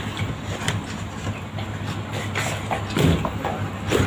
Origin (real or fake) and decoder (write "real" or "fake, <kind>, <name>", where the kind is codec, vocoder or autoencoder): real